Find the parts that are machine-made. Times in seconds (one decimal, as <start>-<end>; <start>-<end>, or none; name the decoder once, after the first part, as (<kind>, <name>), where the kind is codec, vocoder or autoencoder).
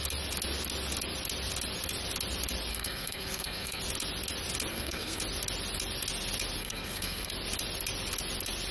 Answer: 2.7-3.8 (codec, SNAC); 4.7-5.2; 6.6-7.3